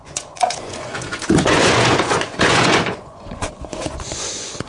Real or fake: fake